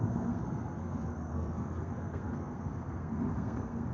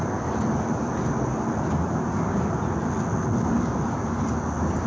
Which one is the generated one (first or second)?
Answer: first